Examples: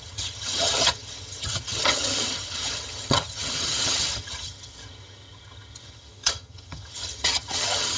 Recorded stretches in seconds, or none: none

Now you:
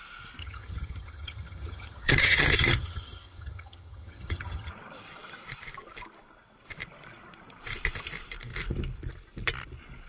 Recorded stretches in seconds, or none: 0.0-0.4; 4.7-10.1

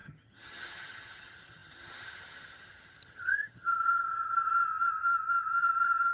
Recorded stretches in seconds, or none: none

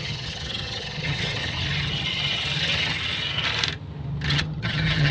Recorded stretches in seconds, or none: 1.4-4.3

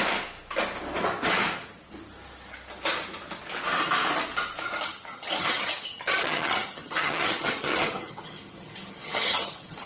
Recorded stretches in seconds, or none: 0.0-4.8